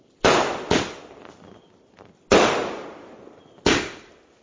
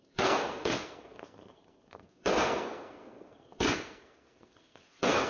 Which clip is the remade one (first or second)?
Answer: second